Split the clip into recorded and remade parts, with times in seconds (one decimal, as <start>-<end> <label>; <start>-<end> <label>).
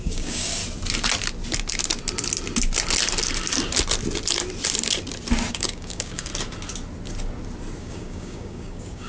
0.0-0.6 remade; 0.6-5.5 recorded; 5.5-6.3 remade; 6.3-7.8 recorded; 7.8-9.1 remade